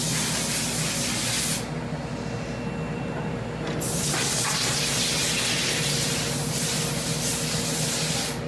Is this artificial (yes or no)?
no